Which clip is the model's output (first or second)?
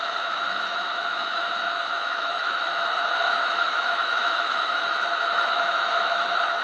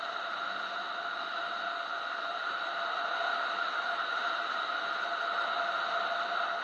first